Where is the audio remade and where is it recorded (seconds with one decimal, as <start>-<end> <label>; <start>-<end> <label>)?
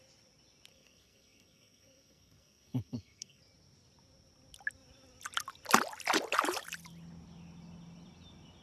0.0-0.7 recorded; 0.7-3.4 remade; 3.4-8.6 recorded